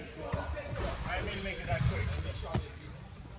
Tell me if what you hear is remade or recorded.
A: remade